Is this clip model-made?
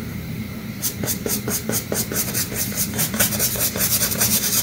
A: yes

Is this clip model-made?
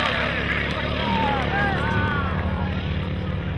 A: yes